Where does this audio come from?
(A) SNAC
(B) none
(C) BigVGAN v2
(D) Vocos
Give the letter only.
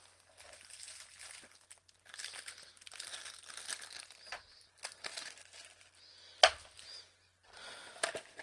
B